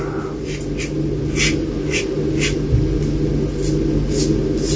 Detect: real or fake real